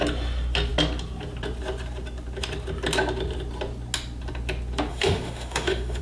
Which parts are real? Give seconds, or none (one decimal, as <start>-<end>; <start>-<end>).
0.0-4.9